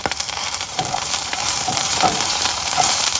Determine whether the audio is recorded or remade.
remade